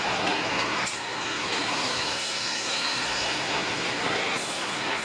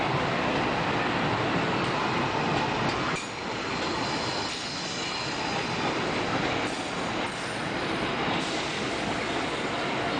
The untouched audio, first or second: second